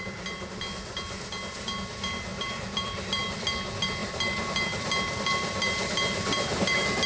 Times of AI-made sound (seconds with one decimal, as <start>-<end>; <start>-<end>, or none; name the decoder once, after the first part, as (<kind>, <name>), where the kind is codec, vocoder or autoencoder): 2.3-3.4 (vocoder, BigVGAN v2); 4.0-7.1